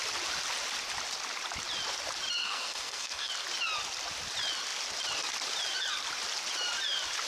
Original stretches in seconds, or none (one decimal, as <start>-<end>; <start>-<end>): 0.0-2.4; 3.3-7.3